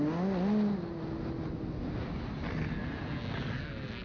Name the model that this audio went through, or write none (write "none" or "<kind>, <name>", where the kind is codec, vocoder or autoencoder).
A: none